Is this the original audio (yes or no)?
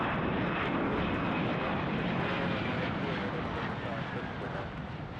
yes